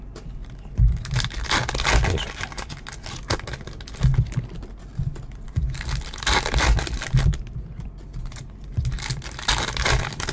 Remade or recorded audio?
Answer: recorded